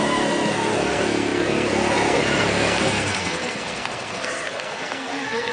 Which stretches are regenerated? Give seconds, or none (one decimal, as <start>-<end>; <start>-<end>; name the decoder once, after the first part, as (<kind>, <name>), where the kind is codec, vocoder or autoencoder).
0.0-5.5 (codec, SNAC)